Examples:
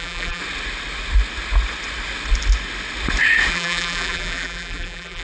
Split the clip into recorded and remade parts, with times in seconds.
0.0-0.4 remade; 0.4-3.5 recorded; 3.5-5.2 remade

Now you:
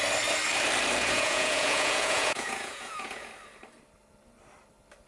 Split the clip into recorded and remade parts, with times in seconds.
0.0-1.0 recorded; 1.0-3.3 remade; 3.3-5.1 recorded

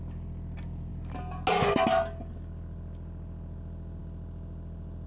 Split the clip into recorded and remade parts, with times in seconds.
0.0-5.1 recorded

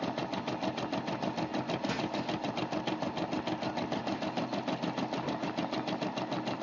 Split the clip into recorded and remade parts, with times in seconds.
0.0-6.6 recorded

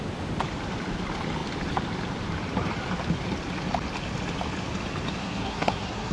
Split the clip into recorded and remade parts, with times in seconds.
0.0-5.2 recorded; 5.2-6.1 remade

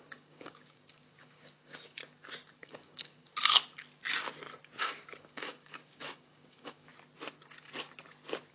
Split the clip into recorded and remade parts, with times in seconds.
0.0-2.0 remade; 2.0-2.6 recorded; 2.6-3.3 remade; 3.3-4.8 recorded; 4.8-6.9 remade; 6.9-8.5 recorded

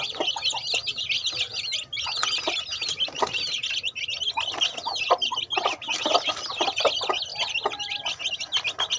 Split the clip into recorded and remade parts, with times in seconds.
0.0-9.0 recorded

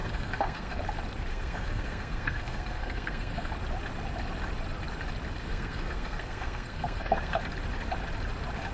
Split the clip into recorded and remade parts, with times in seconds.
0.0-0.8 remade; 0.8-1.3 recorded; 1.3-3.5 remade; 3.5-5.4 recorded; 5.4-7.4 remade; 7.4-8.7 recorded